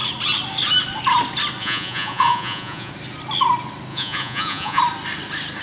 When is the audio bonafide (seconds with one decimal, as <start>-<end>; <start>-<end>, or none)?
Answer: 0.0-1.6; 2.9-3.9; 4.8-5.6